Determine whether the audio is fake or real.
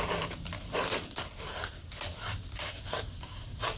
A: fake